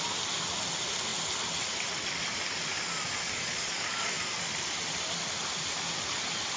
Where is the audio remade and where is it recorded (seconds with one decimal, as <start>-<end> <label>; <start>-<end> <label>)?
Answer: 0.0-3.2 recorded; 3.2-4.4 remade; 4.4-6.6 recorded